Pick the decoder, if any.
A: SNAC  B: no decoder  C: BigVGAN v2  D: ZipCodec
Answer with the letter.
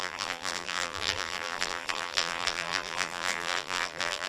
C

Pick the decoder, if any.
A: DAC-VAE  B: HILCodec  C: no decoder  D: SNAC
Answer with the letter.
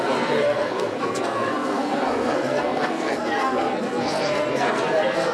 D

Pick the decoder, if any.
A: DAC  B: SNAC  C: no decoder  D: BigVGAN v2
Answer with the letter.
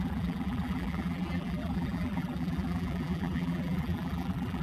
D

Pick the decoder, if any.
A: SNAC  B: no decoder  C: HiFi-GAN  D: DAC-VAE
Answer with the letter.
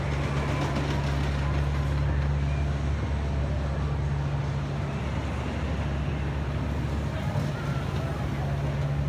B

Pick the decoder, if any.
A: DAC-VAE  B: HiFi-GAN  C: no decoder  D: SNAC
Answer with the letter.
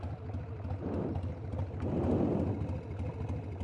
C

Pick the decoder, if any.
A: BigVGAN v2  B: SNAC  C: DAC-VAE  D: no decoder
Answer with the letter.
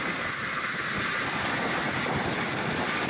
D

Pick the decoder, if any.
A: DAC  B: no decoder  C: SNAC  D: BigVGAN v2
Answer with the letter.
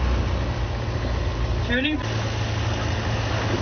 B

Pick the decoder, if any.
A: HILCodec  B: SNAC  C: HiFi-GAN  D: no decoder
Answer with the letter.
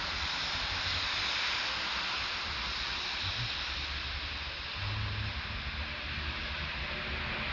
D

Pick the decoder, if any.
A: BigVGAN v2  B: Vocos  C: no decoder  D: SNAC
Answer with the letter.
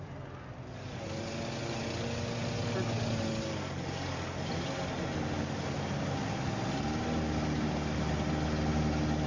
C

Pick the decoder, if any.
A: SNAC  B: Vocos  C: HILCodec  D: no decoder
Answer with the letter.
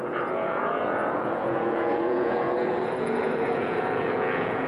B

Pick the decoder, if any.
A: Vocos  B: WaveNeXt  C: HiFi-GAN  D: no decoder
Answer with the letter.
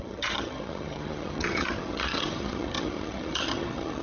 C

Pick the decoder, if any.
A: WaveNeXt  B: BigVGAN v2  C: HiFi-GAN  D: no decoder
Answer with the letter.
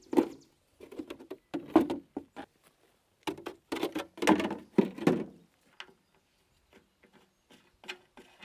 D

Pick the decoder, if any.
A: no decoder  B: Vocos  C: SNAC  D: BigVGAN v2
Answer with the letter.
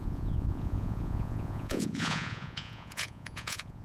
B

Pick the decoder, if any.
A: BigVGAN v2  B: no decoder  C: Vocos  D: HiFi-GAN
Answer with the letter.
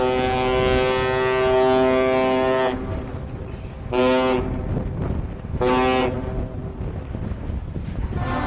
B